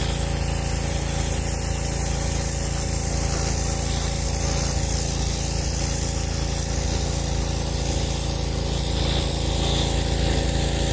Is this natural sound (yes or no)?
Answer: yes